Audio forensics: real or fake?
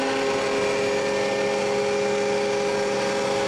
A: real